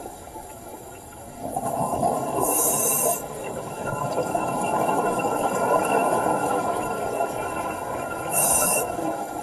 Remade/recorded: remade